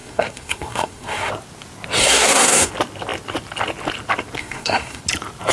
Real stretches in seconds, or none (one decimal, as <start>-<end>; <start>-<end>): 1.3-2.0; 2.7-4.4; 5.0-5.5